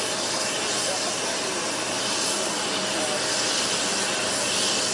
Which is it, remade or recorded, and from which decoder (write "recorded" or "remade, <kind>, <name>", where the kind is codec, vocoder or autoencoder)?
recorded